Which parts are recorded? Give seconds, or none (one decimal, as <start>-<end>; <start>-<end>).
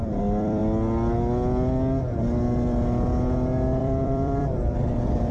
0.6-3.8